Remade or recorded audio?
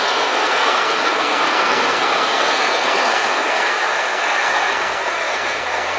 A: remade